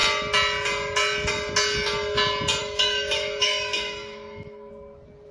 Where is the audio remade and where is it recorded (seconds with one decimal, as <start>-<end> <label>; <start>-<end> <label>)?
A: 0.0-2.6 recorded; 2.6-4.7 remade; 4.7-5.3 recorded